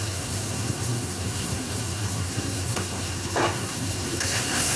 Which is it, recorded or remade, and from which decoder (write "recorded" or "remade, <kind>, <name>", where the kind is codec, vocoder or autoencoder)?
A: remade, codec, SNAC